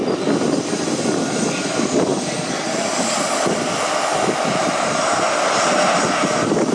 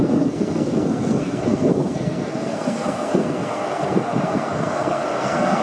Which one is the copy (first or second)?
second